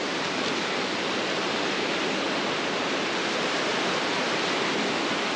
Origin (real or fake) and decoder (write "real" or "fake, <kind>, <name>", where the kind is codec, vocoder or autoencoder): real